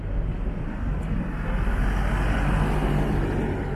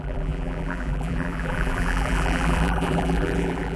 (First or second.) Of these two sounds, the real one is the first